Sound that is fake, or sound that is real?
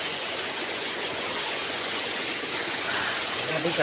fake